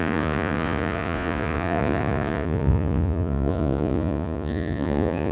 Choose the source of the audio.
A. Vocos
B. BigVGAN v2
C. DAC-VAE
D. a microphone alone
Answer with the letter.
A